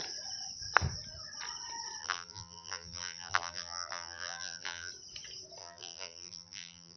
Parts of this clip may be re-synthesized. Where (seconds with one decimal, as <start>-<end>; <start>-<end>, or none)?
2.0-4.9; 5.6-7.0